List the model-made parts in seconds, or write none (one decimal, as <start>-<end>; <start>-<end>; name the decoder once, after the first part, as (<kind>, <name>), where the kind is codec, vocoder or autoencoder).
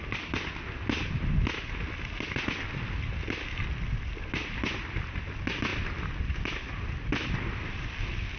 none